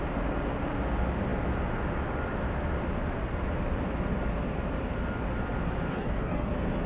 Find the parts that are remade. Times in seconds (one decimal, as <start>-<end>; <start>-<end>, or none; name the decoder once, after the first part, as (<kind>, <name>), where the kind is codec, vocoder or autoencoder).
5.9-6.5 (codec, DAC)